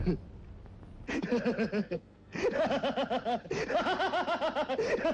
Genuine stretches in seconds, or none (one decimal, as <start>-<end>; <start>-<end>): 0.0-1.8; 2.4-5.1

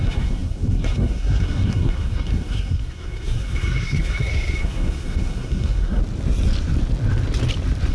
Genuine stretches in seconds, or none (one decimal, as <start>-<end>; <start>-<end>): 6.0-7.9

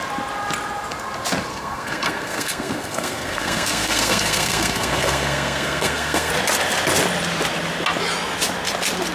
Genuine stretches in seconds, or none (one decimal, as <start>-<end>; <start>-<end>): 0.0-1.5; 6.3-9.1

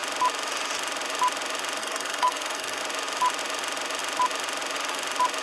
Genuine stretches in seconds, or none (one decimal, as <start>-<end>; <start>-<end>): 0.0-1.8; 2.8-5.4

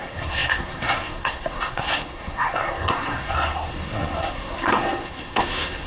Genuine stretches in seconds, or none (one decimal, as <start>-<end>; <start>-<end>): none

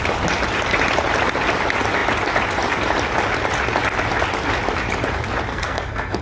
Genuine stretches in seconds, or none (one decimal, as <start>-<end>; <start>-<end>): 0.0-5.5

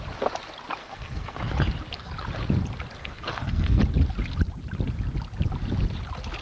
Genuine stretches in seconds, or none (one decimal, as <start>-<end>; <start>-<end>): 0.0-0.8; 1.4-3.0; 3.8-6.4

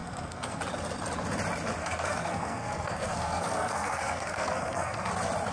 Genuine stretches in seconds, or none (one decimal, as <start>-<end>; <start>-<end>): 0.6-1.8; 5.1-5.5